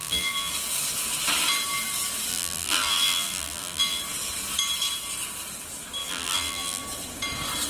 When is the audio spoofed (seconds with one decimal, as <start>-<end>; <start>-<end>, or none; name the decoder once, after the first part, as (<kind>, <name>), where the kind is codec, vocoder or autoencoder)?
0.0-0.5 (vocoder, BigVGAN v2); 2.3-4.0; 6.0-6.8